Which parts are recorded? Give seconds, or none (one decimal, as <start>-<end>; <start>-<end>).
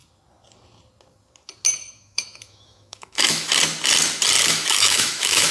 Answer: 0.0-1.9; 3.5-4.4